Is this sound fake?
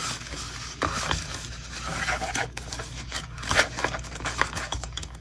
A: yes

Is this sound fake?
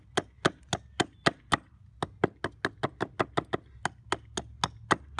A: no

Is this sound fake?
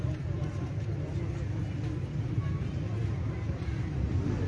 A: no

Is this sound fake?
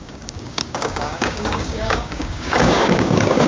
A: yes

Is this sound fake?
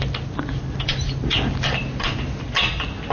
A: no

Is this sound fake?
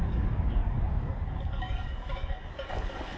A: yes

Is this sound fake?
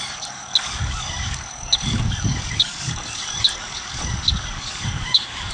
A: yes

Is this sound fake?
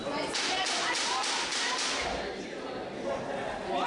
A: no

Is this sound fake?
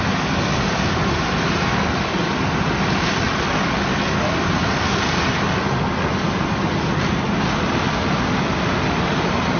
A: no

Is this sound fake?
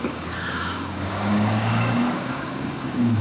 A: yes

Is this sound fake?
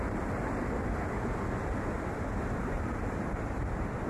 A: no